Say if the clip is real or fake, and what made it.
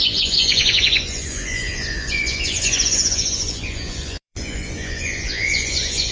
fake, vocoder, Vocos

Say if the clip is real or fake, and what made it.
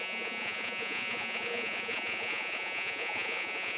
fake, vocoder, Vocos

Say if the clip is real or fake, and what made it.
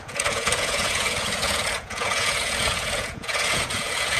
fake, vocoder, Vocos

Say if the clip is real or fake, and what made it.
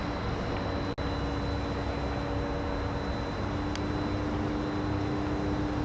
real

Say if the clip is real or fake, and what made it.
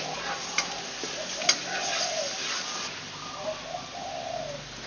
real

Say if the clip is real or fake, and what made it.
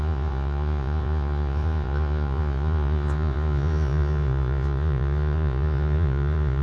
fake, vocoder, Vocos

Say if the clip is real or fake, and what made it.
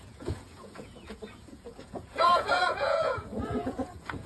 fake, vocoder, Vocos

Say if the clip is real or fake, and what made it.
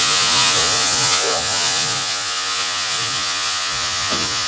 fake, vocoder, Vocos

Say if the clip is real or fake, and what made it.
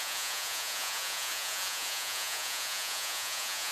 fake, vocoder, Vocos